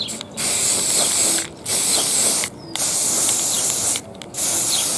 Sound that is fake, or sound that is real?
real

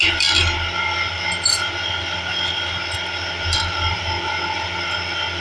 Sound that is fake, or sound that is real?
real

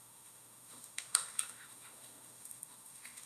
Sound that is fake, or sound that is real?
fake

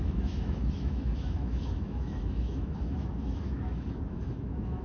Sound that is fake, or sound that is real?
fake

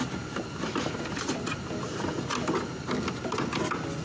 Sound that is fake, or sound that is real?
real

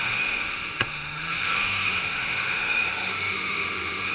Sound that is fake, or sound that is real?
fake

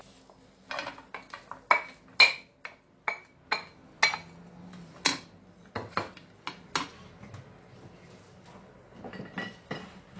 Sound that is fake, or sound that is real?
real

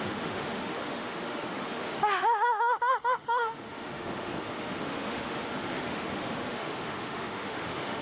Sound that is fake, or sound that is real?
fake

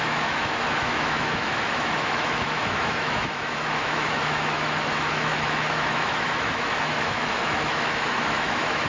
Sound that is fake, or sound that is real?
fake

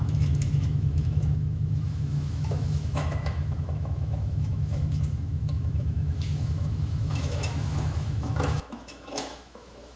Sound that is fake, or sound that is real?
fake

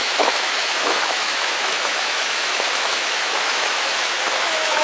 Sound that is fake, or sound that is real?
fake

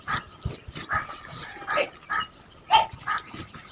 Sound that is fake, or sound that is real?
real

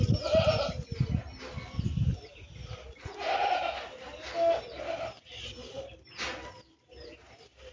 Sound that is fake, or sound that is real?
real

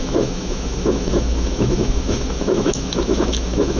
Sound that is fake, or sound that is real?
fake